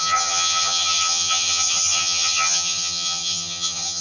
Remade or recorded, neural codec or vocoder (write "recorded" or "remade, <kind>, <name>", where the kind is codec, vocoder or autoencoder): remade, vocoder, HiFi-GAN